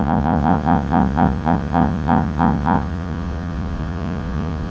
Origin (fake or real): fake